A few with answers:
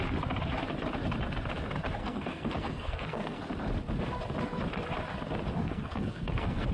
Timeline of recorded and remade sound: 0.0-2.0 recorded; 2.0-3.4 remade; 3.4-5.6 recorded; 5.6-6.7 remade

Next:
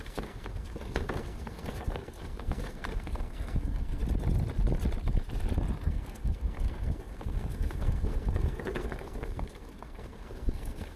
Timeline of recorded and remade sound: 0.0-4.0 remade; 4.0-5.9 recorded; 5.9-11.0 remade